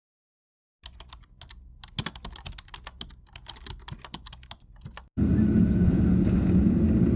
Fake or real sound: real